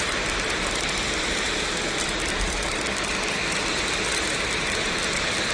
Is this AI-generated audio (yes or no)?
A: no